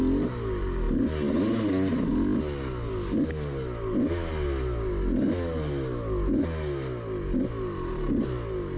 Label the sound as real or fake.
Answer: real